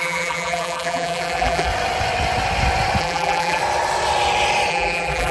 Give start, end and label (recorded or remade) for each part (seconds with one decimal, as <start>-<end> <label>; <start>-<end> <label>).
0.0-1.7 remade; 1.7-3.0 recorded; 3.0-3.6 remade; 3.6-4.7 recorded; 4.7-5.3 remade